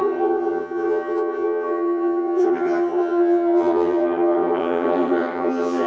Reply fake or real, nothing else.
fake